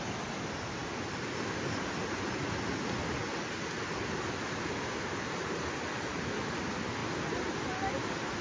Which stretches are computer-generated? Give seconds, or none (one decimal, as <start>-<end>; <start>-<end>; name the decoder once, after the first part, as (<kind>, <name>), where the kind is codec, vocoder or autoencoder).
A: none